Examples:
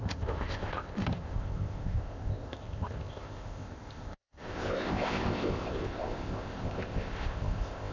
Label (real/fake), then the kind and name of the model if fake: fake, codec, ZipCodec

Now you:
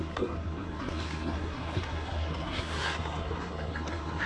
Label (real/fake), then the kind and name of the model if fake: fake, codec, SNAC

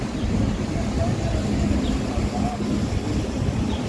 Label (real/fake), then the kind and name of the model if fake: real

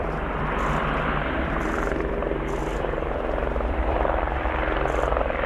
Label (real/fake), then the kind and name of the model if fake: fake, vocoder, BigVGAN v2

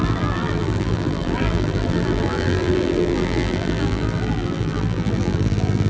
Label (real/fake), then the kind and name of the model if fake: fake, vocoder, BigVGAN v2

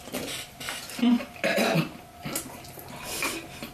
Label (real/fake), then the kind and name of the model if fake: real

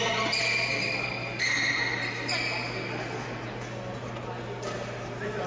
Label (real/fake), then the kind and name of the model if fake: real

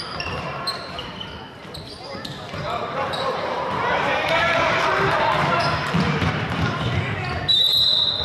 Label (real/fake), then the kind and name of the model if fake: fake, vocoder, BigVGAN v2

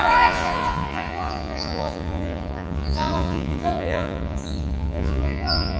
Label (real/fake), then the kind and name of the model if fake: fake, vocoder, Vocos